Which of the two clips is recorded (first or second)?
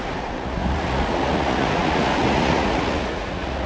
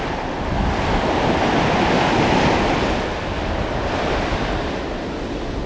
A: second